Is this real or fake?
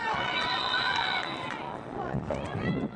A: fake